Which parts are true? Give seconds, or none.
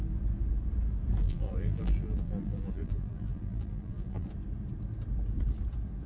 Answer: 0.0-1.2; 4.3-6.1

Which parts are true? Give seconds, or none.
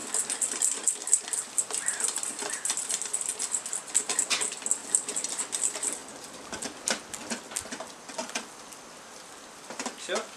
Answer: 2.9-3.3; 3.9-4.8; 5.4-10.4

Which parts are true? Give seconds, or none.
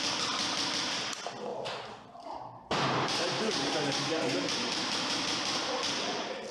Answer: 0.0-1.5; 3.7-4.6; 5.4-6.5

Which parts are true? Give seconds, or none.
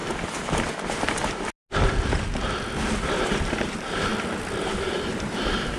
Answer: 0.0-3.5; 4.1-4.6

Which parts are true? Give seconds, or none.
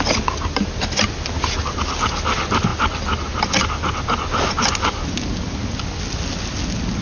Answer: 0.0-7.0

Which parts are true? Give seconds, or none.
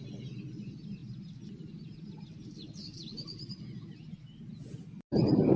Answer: 0.0-5.6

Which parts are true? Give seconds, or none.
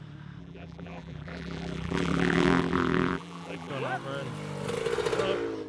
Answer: 0.0-0.4; 3.7-5.7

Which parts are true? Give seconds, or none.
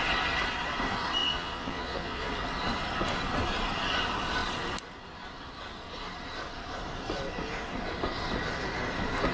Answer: 0.0-1.2; 2.3-9.3